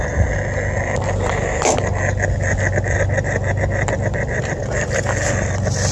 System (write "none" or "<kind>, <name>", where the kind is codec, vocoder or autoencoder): none